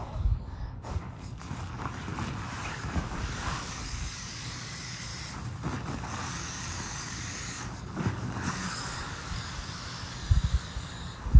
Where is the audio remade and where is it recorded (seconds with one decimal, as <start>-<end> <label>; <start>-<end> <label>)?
0.0-2.1 remade; 2.1-2.7 recorded; 2.7-5.1 remade; 5.1-5.9 recorded; 5.9-11.4 remade